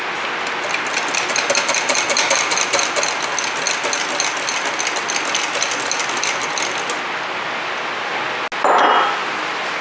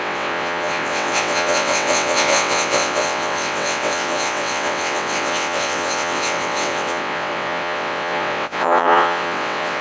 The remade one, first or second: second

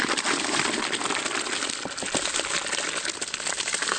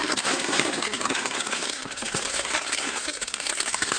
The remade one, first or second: second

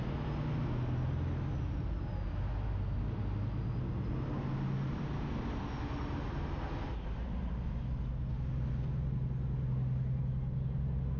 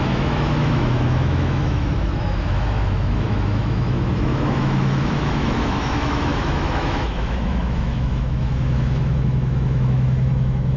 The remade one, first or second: second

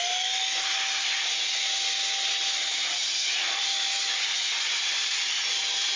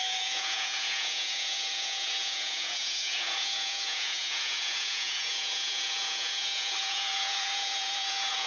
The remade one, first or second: second